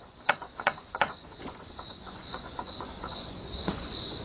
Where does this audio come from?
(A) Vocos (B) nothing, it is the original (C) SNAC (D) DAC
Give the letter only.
A